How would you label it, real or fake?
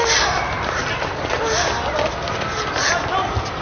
real